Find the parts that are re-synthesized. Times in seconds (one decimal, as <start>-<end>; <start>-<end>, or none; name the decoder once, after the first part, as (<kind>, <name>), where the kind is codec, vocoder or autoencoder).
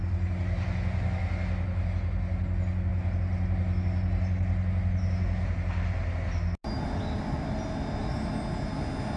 none